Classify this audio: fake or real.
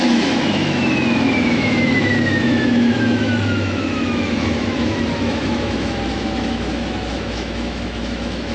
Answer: fake